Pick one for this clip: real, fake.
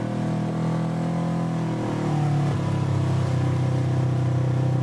real